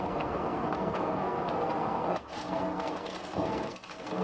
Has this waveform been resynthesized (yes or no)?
yes